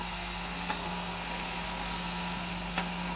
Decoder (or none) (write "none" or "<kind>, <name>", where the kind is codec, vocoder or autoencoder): codec, SNAC